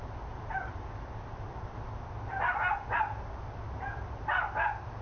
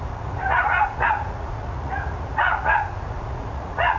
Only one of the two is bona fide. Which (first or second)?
first